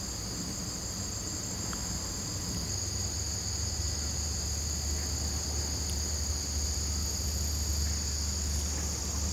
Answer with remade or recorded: recorded